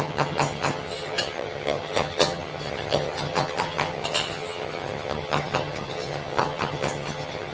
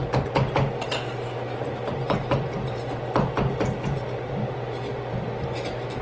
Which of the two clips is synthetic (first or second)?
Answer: first